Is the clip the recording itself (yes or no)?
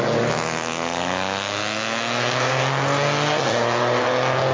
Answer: yes